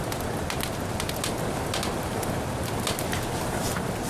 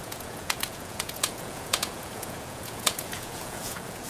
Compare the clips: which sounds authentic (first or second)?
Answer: first